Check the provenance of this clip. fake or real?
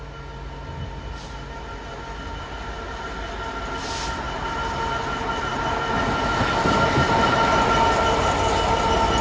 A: real